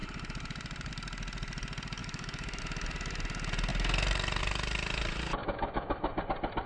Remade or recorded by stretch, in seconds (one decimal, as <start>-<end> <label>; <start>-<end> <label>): 0.0-2.0 recorded; 2.0-2.6 remade; 2.6-5.4 recorded; 5.4-6.2 remade; 6.2-6.7 recorded